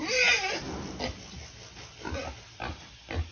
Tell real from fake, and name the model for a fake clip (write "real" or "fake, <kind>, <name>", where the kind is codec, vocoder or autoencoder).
real